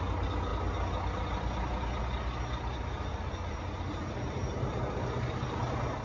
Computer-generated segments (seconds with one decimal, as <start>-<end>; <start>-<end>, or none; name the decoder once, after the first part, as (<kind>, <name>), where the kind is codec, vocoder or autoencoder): none